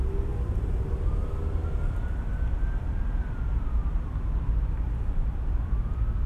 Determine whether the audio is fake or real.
real